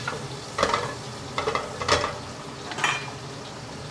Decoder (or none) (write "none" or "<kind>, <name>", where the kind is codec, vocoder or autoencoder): none